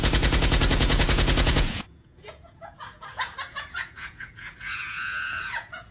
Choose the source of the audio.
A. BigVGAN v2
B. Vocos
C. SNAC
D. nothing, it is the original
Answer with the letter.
B